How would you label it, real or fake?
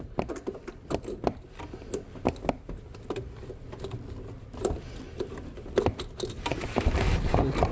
real